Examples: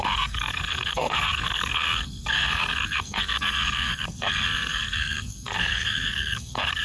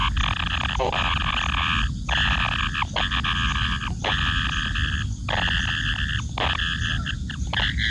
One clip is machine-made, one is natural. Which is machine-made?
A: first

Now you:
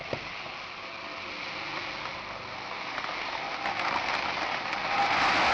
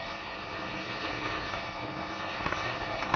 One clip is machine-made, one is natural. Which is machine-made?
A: second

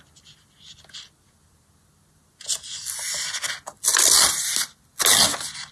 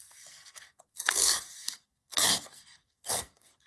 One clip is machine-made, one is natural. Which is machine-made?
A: second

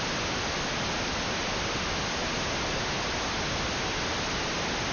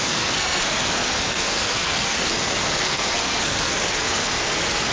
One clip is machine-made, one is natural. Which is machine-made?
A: second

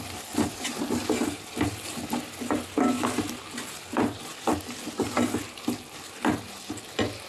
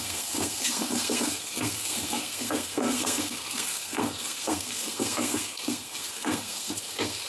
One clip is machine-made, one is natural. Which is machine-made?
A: second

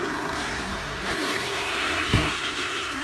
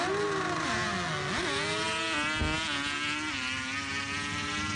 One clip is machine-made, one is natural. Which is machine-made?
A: first